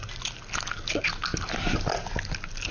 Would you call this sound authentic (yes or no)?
yes